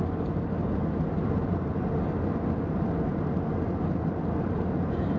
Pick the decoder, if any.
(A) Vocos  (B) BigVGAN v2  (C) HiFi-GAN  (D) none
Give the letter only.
B